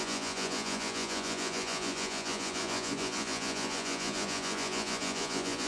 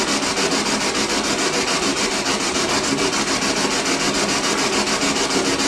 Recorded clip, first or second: second